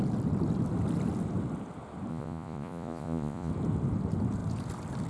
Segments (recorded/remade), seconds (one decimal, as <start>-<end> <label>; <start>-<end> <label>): 0.0-2.1 recorded; 2.1-3.5 remade; 3.5-5.1 recorded